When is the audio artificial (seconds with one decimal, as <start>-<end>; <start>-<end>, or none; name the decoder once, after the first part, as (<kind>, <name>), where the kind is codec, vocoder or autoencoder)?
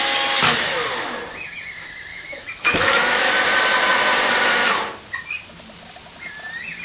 2.1-3.3 (autoencoder, DAC-VAE)